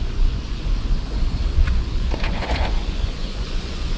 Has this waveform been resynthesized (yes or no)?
yes